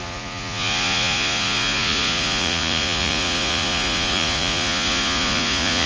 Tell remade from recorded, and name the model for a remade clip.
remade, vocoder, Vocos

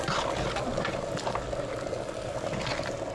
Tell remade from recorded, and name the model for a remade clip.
recorded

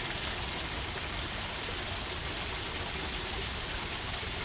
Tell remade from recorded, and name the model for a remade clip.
recorded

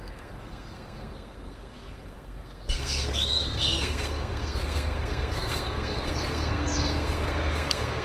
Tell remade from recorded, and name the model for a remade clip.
remade, codec, SNAC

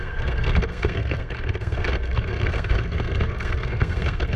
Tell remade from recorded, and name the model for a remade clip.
remade, codec, SNAC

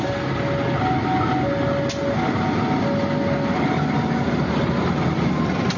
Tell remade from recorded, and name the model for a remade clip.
recorded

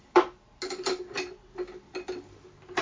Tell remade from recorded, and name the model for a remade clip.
recorded